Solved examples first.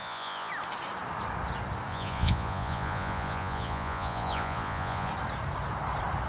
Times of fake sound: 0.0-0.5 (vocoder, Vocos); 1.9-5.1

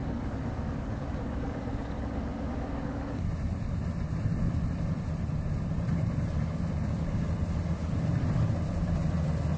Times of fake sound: 0.0-3.3 (codec, DAC)

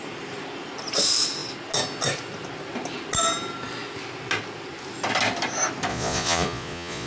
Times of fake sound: 5.9-7.1 (vocoder, Vocos)

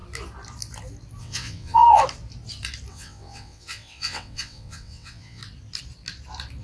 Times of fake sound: 1.2-2.0 (vocoder, WaveNeXt); 2.9-5.4

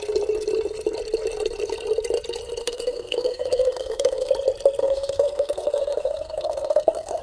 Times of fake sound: 2.6-4.3 (codec, SNAC); 4.8-7.2

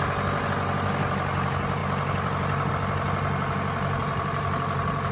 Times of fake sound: 1.8-2.7 (vocoder, BigVGAN v2); 4.0-5.1

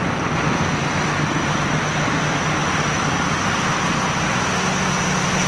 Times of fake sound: none